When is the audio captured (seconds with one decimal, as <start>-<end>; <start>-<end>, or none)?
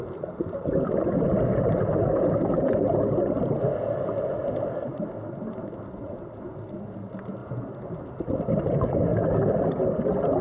0.0-10.4